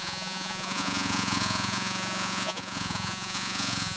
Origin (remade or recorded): remade